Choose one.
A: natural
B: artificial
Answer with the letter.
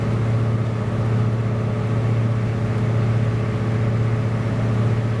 A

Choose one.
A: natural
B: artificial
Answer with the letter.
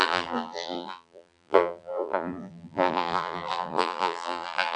B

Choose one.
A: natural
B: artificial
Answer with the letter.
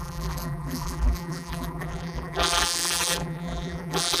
B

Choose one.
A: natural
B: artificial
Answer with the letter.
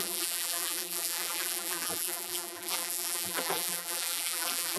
B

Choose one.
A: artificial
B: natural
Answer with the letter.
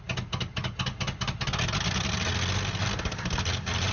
B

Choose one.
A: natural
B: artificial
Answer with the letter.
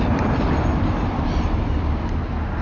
B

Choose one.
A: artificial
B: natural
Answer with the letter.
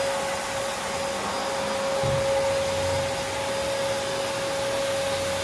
B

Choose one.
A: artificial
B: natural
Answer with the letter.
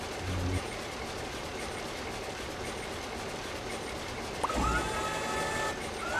B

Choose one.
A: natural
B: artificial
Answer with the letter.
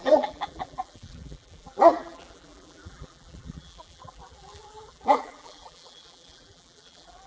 B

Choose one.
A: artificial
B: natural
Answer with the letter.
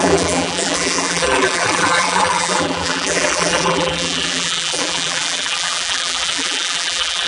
A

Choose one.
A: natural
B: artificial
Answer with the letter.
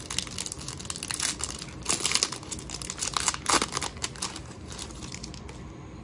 A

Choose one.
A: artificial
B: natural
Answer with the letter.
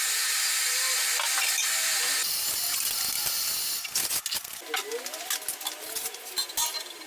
B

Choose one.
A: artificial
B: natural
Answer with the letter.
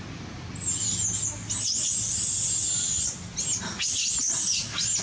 B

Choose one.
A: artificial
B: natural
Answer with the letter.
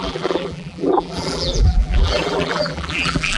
A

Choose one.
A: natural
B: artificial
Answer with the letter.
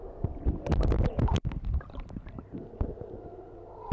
A